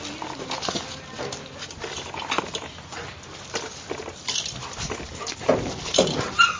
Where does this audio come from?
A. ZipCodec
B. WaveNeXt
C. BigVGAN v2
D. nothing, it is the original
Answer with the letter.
D